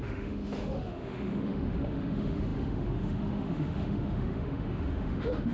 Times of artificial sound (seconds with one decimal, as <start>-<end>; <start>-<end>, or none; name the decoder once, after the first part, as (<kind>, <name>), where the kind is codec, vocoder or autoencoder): 0.0-5.5 (autoencoder, DAC-VAE)